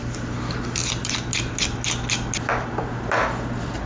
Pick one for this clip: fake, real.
real